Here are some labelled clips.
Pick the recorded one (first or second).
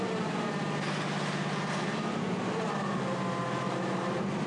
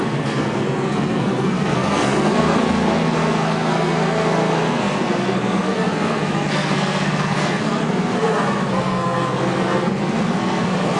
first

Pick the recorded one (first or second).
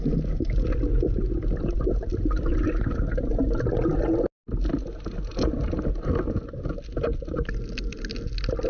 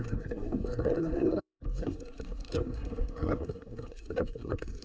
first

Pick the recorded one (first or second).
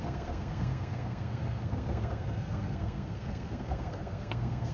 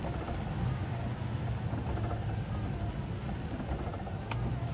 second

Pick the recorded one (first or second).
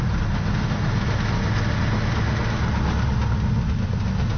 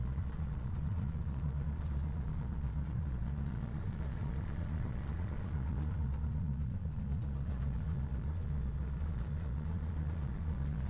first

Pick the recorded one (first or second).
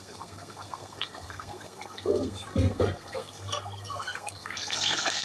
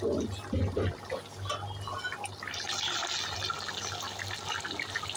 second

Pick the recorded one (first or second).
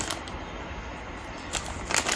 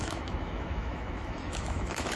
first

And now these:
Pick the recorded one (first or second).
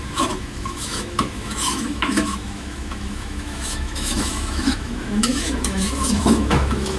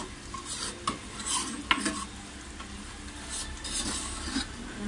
second